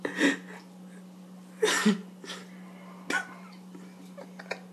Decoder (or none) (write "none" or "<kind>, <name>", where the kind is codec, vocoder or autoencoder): none